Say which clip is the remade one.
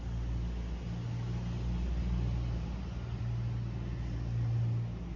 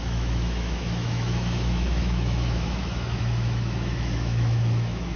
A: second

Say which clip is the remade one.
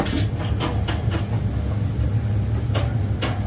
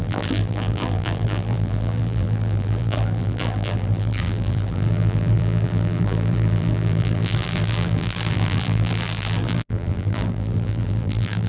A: second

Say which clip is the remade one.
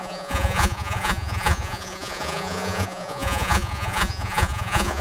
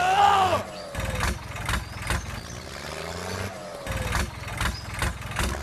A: first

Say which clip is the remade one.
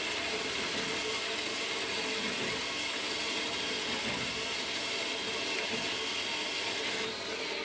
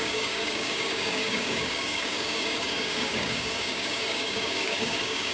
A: second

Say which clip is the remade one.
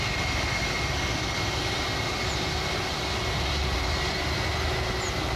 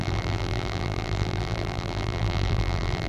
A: second